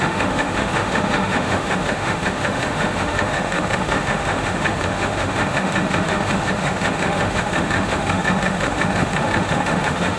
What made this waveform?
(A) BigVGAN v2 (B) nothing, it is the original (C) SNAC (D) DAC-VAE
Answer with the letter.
D